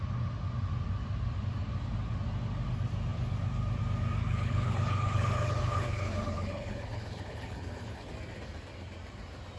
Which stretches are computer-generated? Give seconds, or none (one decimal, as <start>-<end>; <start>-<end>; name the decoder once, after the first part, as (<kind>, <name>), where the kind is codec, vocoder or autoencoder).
4.2-8.1 (codec, HILCodec)